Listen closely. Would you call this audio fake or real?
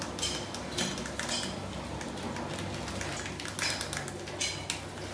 real